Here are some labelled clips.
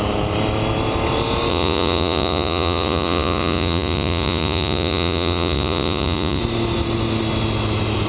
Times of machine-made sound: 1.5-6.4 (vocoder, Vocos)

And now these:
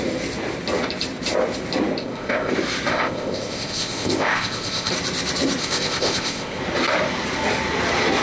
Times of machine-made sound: 2.0-2.5 (codec, ZipCodec); 2.9-4.9; 5.6-6.6

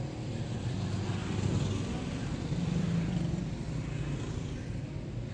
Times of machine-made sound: none

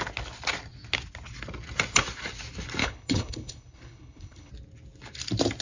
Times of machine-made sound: 2.8-4.5 (codec, HILCodec)